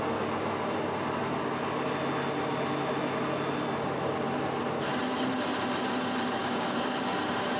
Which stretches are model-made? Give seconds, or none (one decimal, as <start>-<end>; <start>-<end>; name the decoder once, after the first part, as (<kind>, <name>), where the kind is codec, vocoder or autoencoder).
6.4-7.0 (codec, DAC)